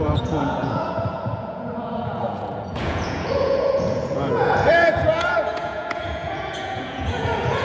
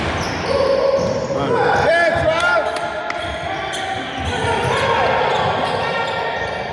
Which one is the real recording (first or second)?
second